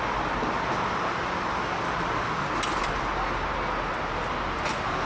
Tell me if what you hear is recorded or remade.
recorded